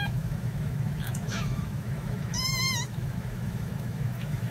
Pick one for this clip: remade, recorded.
remade